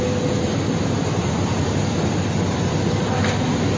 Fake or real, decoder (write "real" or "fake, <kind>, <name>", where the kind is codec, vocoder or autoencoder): real